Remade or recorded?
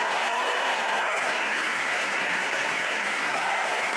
remade